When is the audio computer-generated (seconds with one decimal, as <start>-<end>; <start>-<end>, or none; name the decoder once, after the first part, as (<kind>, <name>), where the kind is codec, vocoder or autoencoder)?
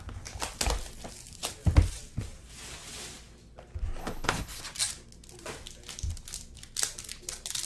4.0-4.6 (codec, HILCodec)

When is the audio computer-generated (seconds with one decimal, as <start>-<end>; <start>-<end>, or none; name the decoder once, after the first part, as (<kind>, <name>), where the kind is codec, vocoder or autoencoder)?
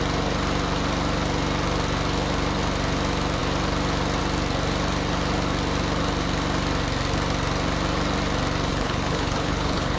8.7-10.0 (codec, HILCodec)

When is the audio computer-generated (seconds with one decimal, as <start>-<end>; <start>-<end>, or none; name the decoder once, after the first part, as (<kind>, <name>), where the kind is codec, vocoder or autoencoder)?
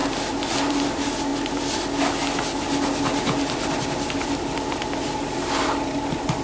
none